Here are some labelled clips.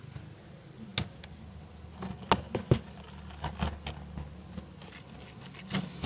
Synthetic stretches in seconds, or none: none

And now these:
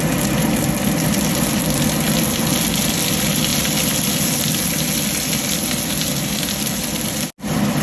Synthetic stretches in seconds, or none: none

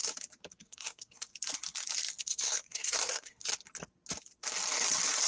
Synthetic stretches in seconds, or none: 0.6-1.3 (codec, SNAC); 2.2-3.5